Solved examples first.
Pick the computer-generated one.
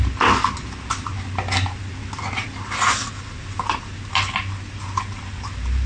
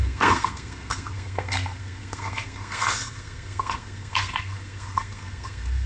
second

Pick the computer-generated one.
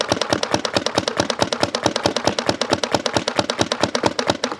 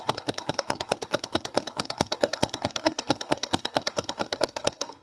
second